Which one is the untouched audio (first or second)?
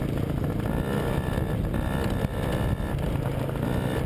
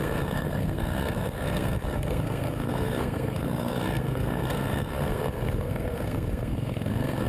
first